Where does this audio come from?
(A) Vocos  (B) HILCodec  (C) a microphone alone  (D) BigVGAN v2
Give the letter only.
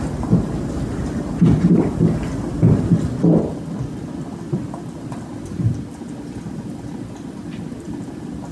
C